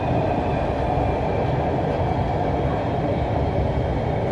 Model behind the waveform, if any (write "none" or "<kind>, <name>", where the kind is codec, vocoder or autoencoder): none